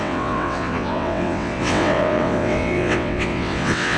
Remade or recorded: remade